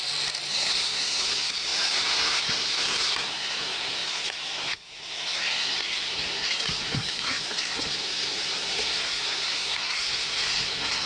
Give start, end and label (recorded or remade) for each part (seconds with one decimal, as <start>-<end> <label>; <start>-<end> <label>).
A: 0.0-0.5 recorded; 0.5-11.1 remade

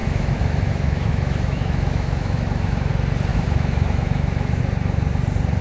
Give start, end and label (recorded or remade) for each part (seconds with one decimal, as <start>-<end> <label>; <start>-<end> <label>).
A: 0.0-2.9 remade; 2.9-3.3 recorded; 3.3-4.6 remade; 4.6-5.6 recorded

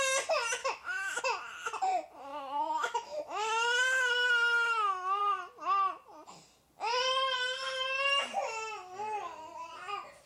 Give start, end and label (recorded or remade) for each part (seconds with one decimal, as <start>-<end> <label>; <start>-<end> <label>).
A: 0.0-0.6 recorded; 0.6-1.2 remade; 1.2-2.3 recorded; 2.3-5.2 remade; 5.2-10.3 recorded

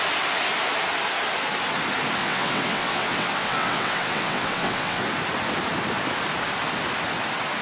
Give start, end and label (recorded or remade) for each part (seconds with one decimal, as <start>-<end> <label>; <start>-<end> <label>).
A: 0.0-2.2 recorded; 2.2-5.0 remade; 5.0-7.6 recorded

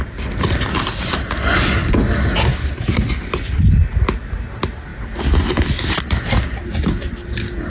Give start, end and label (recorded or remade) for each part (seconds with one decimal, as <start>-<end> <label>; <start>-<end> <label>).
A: 0.0-7.7 recorded